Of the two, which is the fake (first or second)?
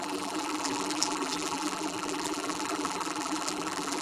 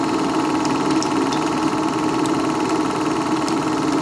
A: first